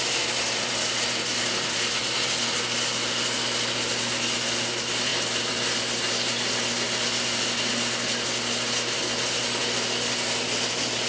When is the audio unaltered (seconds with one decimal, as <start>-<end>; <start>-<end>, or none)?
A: 0.0-11.1